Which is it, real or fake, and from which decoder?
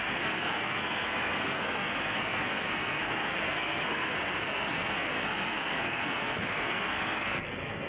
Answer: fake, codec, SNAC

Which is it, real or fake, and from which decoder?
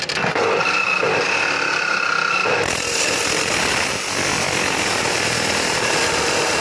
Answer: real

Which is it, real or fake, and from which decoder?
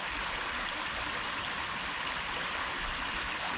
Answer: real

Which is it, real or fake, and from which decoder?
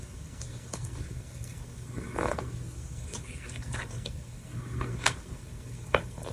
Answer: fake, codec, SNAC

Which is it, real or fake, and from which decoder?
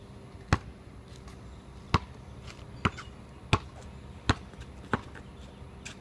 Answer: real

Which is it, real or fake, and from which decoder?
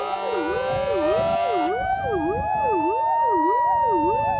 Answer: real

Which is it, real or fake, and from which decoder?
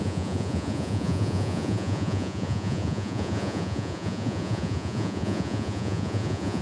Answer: fake, vocoder, Vocos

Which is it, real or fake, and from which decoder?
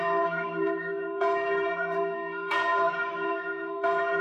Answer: fake, codec, SNAC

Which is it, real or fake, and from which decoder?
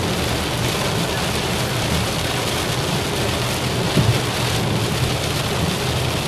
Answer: real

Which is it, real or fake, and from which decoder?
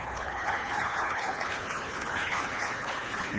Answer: fake, codec, HILCodec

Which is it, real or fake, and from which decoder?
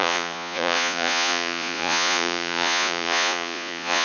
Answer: fake, vocoder, Vocos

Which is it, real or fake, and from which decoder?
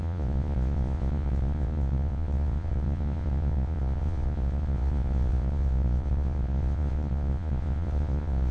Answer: fake, vocoder, Vocos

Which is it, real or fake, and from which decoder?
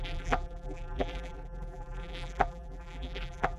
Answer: fake, vocoder, BigVGAN v2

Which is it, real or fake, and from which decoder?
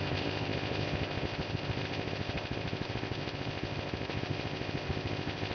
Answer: fake, codec, ZipCodec